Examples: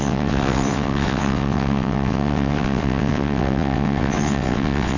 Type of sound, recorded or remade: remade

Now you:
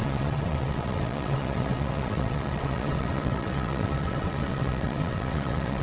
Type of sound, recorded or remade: remade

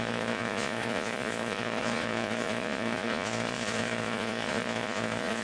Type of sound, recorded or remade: remade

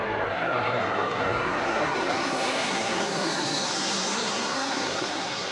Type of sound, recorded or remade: remade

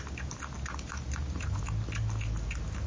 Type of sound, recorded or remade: recorded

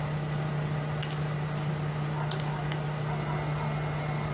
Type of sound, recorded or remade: recorded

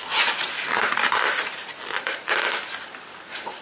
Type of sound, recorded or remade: recorded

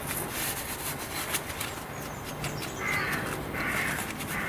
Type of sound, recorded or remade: recorded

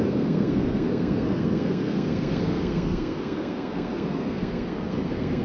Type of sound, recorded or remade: remade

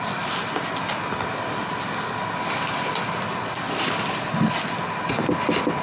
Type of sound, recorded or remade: recorded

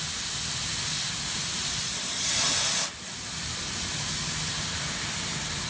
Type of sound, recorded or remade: recorded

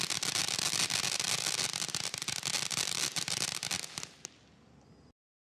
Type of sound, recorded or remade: recorded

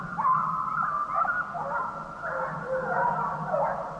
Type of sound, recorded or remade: recorded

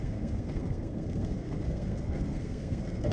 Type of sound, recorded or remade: remade